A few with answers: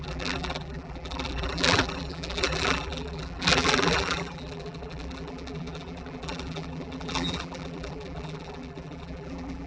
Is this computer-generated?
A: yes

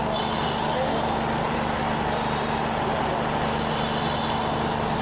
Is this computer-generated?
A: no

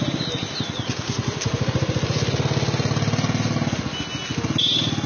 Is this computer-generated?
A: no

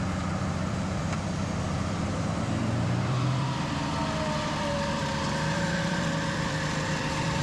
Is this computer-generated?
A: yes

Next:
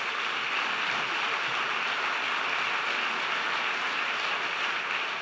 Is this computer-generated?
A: no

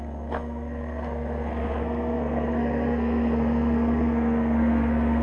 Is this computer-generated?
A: yes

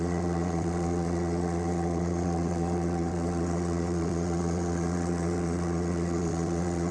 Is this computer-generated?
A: yes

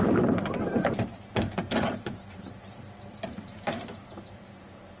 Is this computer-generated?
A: yes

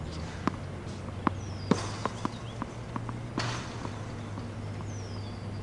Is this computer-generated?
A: no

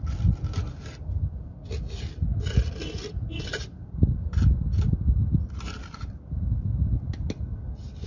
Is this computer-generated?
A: no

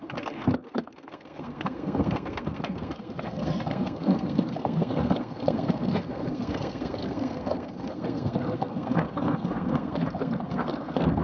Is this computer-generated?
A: yes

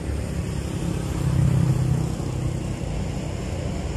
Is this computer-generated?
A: no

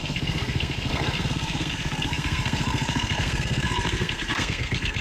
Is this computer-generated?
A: yes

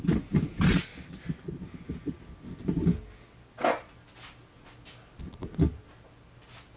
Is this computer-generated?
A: no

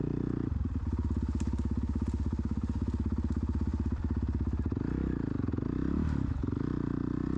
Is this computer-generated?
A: no